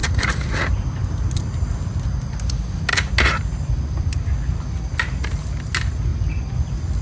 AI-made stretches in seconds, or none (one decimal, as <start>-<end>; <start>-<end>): none

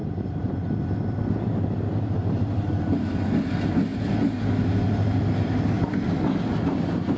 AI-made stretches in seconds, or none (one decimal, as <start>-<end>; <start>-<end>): none

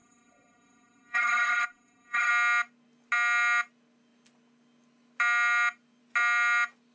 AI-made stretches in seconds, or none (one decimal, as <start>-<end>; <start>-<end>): 0.0-2.3

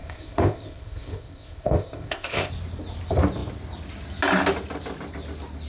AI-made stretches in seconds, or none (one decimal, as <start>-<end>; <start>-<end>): 0.0-2.5

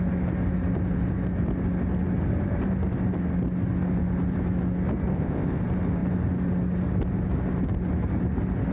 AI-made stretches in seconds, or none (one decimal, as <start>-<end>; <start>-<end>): 5.1-5.6

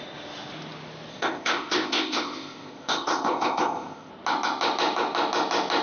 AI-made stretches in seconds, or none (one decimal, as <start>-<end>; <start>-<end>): 1.1-4.1